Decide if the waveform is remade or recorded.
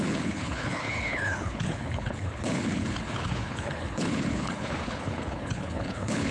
remade